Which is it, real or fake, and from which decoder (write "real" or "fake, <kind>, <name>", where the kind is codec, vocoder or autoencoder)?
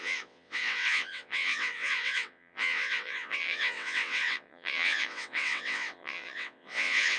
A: fake, vocoder, WaveNeXt